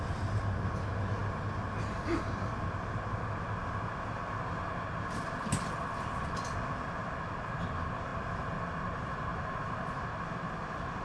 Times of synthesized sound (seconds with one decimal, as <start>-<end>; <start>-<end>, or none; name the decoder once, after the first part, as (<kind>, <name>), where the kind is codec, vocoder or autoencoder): none